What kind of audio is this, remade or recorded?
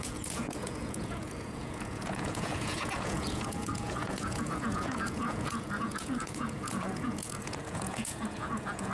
remade